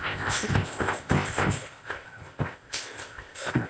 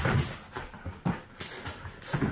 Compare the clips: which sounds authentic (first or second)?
second